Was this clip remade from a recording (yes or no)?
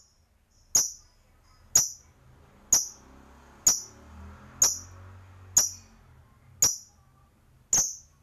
no